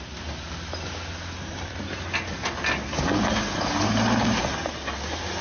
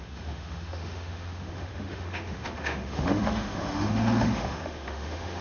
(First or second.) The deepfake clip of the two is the second